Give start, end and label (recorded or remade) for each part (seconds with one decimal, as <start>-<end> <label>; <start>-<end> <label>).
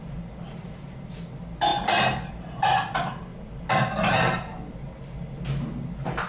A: 0.0-6.3 recorded